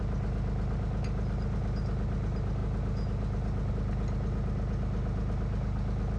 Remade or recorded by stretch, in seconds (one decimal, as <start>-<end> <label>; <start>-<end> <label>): 0.0-6.2 recorded